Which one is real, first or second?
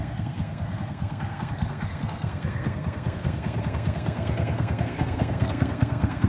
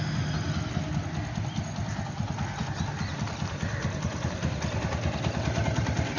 second